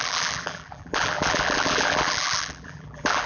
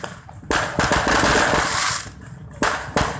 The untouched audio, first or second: second